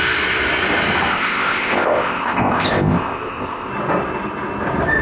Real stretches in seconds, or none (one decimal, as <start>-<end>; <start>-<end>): 0.0-1.1; 3.7-5.0